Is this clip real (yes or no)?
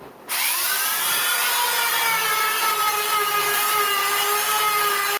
no